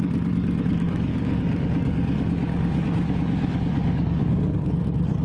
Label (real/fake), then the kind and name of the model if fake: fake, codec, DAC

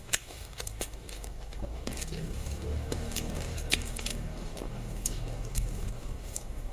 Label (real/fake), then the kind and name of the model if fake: fake, codec, DAC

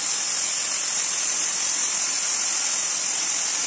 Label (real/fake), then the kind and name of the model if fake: real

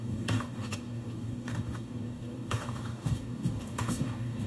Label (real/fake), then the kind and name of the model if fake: fake, codec, DAC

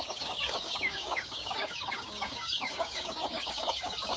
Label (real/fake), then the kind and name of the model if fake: fake, codec, DAC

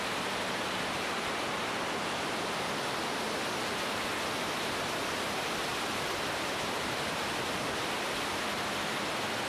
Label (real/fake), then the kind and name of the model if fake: real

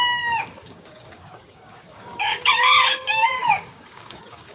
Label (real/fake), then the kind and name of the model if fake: fake, codec, DAC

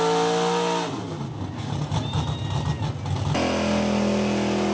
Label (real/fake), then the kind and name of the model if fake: real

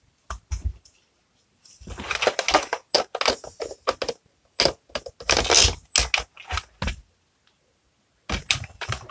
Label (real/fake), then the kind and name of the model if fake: real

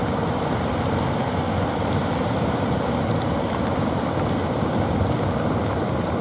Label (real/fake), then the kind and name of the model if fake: real